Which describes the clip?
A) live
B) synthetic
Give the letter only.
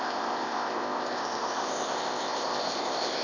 B